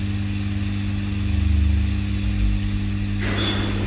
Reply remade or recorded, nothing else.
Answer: recorded